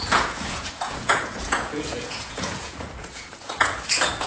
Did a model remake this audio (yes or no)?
yes